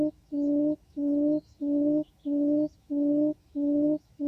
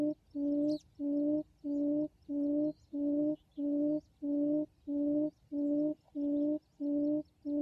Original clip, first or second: second